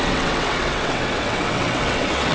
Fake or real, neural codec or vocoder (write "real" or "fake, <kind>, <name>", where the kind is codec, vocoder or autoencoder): fake, vocoder, WaveNeXt